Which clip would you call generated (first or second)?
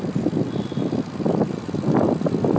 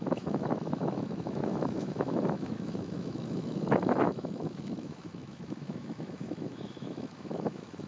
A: second